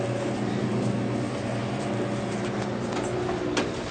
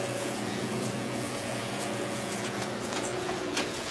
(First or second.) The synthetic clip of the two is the second